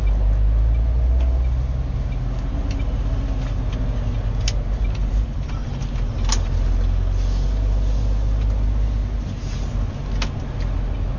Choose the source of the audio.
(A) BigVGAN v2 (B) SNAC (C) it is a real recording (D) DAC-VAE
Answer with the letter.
C